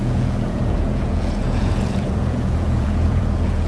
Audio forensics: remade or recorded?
remade